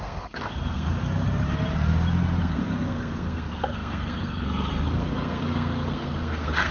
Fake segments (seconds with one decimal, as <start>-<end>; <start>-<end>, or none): 0.0-1.0; 2.4-6.7